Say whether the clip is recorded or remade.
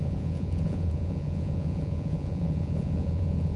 remade